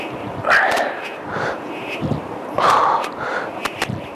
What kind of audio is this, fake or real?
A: real